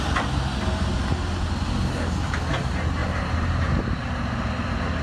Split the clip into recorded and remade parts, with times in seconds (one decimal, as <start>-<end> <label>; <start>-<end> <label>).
0.0-3.0 recorded; 3.0-3.8 remade; 3.8-5.0 recorded